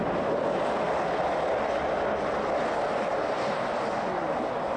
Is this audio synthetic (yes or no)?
no